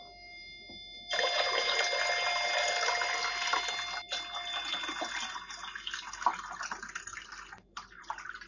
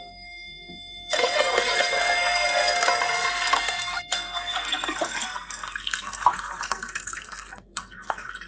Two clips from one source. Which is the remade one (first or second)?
second